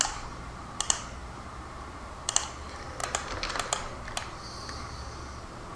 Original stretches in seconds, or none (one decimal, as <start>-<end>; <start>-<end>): 0.0-5.8